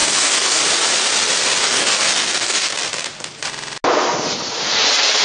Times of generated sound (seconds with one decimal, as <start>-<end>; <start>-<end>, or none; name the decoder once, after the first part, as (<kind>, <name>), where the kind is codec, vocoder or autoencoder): 0.0-0.6 (codec, DAC); 1.6-2.7